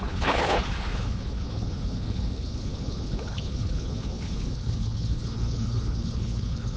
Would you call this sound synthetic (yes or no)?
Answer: yes